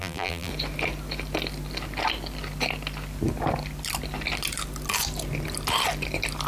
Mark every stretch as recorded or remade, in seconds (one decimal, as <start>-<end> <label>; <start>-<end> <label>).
0.0-0.5 remade; 0.5-6.5 recorded